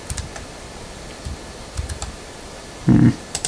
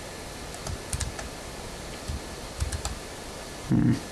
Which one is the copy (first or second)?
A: first